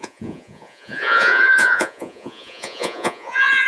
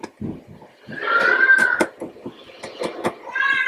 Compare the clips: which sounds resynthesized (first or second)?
first